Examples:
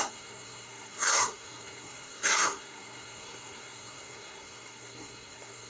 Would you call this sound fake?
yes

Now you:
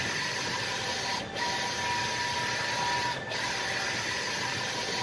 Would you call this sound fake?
no